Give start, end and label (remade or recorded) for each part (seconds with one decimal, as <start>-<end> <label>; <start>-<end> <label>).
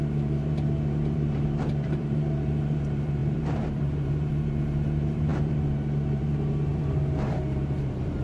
0.0-8.2 remade